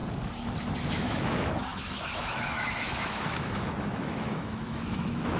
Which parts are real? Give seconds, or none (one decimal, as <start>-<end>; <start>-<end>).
0.0-0.8